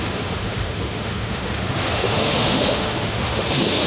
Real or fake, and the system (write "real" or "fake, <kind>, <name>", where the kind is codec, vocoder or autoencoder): fake, autoencoder, DAC-VAE